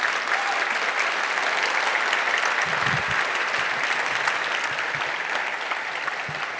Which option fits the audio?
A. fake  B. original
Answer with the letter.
B